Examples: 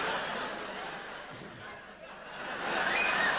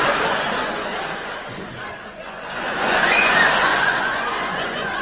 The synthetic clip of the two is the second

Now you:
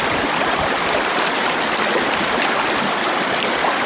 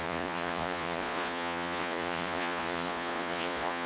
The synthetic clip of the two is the second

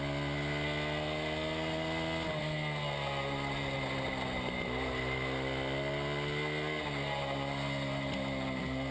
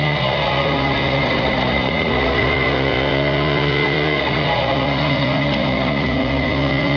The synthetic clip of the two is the second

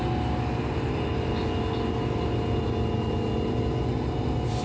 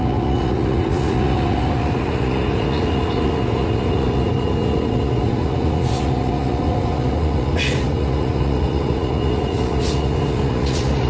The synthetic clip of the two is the second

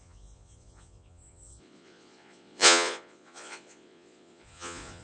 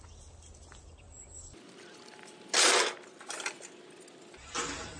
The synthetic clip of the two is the first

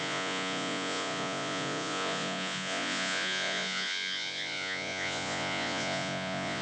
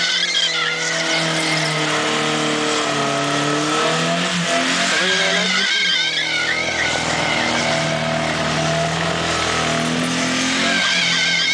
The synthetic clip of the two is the first